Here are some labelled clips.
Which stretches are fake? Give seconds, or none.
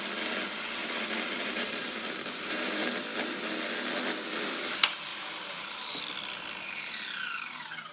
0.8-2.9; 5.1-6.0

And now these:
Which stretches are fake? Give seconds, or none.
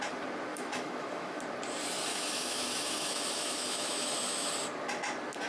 0.5-1.4; 2.1-4.5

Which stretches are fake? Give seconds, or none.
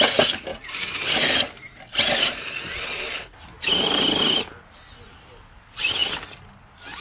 0.5-1.1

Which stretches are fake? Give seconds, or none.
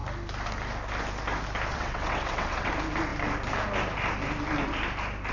1.7-2.7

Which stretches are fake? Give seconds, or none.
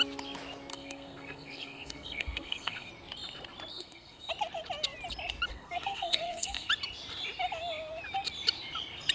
0.7-2.9; 3.7-4.3; 5.5-6.7